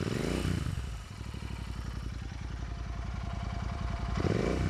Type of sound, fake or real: fake